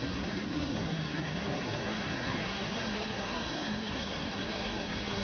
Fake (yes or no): yes